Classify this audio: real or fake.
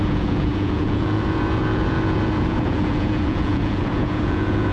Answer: fake